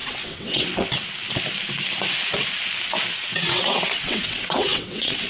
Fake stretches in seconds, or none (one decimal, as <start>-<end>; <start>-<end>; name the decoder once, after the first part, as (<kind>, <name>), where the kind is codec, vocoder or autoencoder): 0.0-0.9 (vocoder, WaveNeXt); 3.2-5.3